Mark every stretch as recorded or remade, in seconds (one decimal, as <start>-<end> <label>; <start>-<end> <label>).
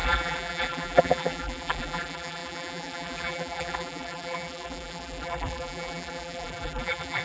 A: 0.0-7.2 remade